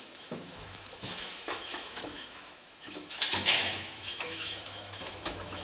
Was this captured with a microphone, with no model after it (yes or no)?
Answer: no